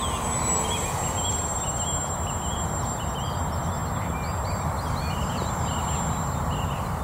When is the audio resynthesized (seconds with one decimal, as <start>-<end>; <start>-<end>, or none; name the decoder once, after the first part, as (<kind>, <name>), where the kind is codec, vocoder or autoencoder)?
none